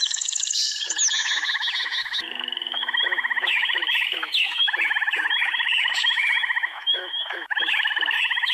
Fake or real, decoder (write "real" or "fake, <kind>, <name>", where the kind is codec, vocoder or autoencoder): fake, autoencoder, DAC-VAE